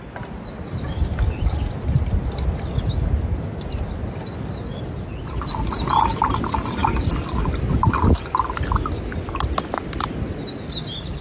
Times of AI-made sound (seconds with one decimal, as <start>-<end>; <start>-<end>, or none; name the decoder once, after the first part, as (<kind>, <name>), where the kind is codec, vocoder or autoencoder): none